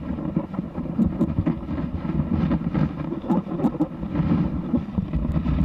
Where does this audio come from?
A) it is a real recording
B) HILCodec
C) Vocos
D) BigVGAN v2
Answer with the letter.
A